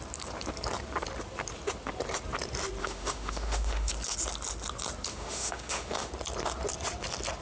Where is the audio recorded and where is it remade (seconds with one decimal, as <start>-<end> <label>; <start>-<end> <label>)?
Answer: 0.0-2.8 recorded; 2.8-3.9 remade; 3.9-5.1 recorded; 5.1-6.1 remade; 6.1-7.4 recorded